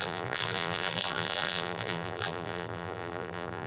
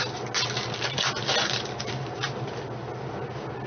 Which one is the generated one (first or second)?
first